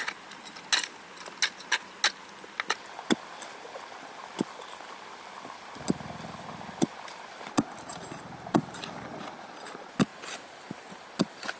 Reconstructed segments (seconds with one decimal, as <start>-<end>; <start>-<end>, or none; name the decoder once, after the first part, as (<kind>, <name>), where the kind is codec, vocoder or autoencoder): 7.9-9.0 (vocoder, BigVGAN v2); 10.1-11.0